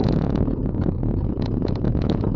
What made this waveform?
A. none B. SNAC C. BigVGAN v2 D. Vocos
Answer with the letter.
D